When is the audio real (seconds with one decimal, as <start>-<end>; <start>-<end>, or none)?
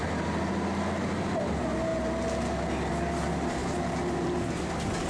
0.0-5.1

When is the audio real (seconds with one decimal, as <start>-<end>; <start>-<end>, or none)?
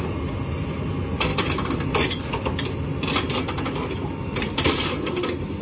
0.0-5.6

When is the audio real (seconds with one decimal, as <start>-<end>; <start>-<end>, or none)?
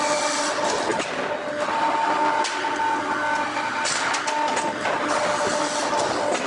0.0-6.5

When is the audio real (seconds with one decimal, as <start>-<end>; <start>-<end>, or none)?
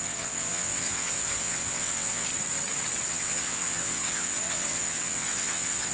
2.3-3.1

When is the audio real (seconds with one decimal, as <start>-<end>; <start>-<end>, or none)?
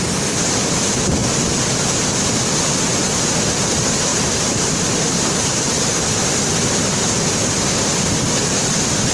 0.0-4.1; 7.1-9.1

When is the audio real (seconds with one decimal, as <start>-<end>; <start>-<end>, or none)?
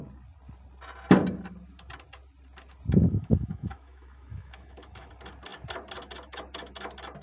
0.0-3.0; 5.1-7.2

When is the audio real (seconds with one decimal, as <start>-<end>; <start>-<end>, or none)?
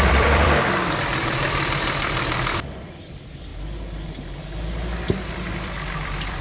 3.5-5.2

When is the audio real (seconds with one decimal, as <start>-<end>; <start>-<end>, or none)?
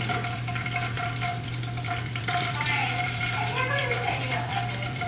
none